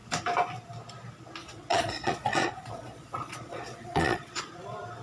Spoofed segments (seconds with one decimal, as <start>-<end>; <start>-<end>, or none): 1.4-4.4